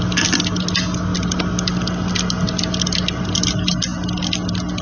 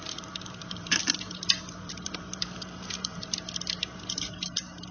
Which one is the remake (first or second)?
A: second